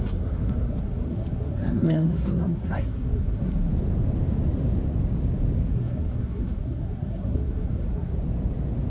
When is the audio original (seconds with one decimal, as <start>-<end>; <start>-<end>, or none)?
3.7-5.7; 8.1-8.9